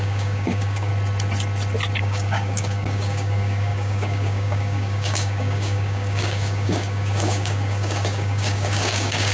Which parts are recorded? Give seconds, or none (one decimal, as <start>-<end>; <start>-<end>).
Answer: 0.9-2.0